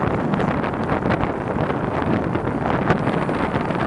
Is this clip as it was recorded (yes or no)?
yes